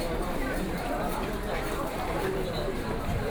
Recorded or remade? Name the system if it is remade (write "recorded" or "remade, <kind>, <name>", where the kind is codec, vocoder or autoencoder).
remade, vocoder, BigVGAN v2